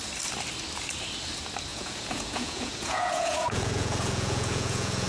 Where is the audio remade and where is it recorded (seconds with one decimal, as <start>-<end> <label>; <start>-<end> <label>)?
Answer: 0.0-1.7 recorded; 1.7-5.1 remade